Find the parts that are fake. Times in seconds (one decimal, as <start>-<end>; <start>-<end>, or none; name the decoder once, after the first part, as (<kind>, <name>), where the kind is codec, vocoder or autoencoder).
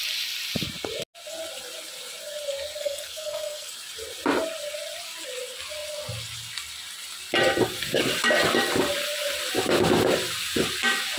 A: 2.8-3.7 (codec, SNAC)